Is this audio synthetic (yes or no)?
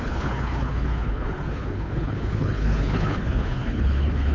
yes